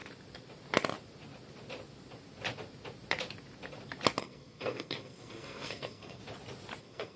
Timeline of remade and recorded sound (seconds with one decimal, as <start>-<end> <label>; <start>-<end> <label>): 0.0-4.2 recorded; 4.2-6.2 remade; 6.2-6.8 recorded; 6.8-7.2 remade

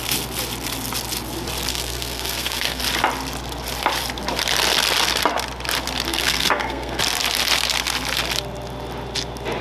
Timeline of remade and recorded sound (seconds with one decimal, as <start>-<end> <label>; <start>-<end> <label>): 0.0-1.7 recorded; 1.7-2.8 remade; 2.8-6.1 recorded; 6.1-7.0 remade; 7.0-9.6 recorded

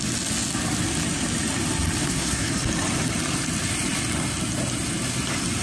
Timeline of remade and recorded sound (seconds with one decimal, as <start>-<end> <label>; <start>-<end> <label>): 0.0-2.0 recorded; 2.0-2.6 remade; 2.6-5.6 recorded